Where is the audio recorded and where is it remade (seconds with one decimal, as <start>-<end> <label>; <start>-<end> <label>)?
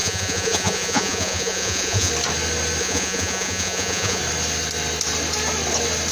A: 0.0-2.1 remade; 2.1-2.8 recorded; 2.8-4.2 remade; 4.2-6.1 recorded